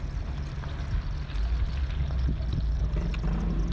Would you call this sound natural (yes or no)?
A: yes